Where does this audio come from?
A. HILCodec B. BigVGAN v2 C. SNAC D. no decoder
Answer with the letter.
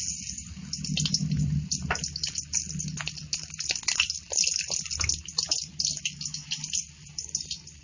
D